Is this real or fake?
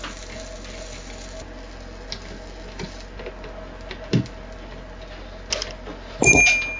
real